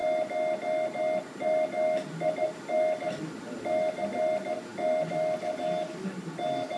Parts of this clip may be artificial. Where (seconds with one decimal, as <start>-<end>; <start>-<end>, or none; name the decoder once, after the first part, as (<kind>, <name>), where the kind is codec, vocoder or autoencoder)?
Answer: none